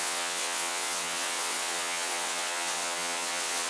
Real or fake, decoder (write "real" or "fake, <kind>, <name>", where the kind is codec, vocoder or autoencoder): fake, vocoder, WaveNeXt